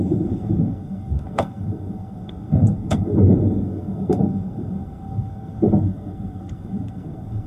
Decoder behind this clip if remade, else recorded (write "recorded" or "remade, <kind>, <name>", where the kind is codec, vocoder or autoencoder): remade, codec, SNAC